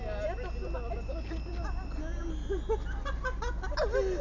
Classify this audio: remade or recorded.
recorded